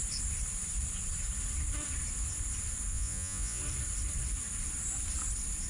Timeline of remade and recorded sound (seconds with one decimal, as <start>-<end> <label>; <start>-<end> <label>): 0.0-2.9 recorded; 2.9-3.6 remade; 3.6-5.7 recorded